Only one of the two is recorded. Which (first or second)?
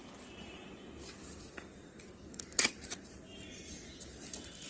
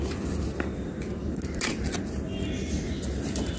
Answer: second